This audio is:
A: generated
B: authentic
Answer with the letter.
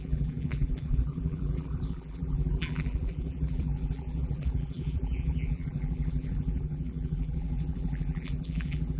A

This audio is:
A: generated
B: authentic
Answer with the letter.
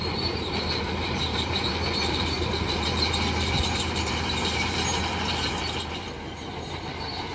A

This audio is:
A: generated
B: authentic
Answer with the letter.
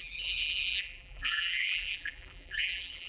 A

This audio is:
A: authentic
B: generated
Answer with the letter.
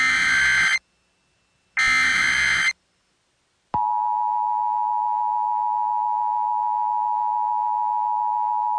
A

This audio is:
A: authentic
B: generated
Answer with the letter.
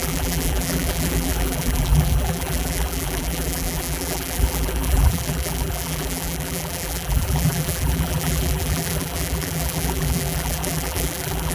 B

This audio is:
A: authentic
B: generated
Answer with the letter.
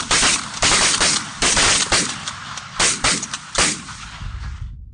A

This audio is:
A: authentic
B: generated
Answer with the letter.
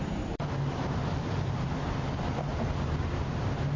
A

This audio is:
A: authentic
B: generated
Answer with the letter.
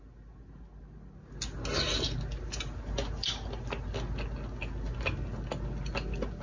A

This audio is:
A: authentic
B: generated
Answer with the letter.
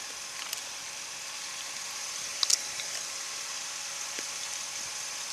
A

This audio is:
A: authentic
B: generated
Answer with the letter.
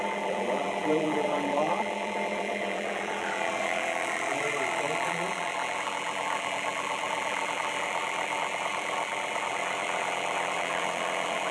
B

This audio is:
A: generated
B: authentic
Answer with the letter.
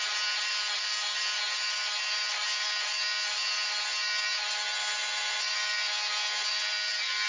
B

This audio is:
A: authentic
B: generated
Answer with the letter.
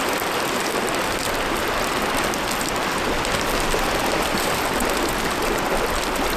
A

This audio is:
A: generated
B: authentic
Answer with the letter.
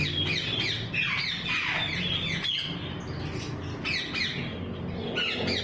B